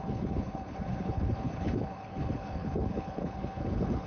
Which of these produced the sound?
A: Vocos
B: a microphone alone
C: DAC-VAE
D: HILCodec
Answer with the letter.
D